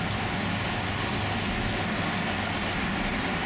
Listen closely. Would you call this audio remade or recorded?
recorded